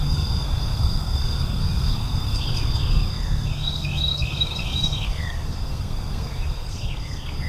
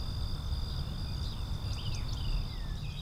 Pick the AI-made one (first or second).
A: first